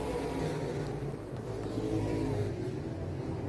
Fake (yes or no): no